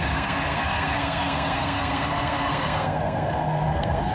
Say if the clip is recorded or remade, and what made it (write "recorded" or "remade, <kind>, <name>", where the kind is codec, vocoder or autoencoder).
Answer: remade, codec, SNAC